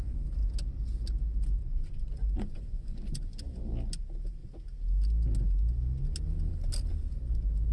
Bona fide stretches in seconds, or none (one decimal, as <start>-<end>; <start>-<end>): 0.0-1.6; 3.2-7.7